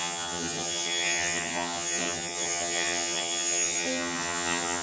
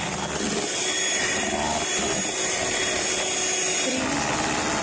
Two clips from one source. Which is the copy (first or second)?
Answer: first